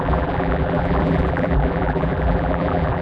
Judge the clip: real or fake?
fake